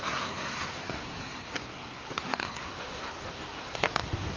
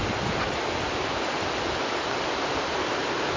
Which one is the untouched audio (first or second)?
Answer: second